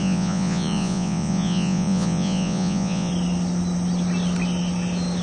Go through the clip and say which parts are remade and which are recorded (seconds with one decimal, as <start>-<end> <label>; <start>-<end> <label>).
0.0-3.1 remade; 3.1-5.2 recorded